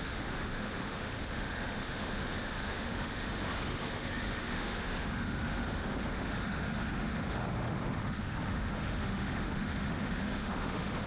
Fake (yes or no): yes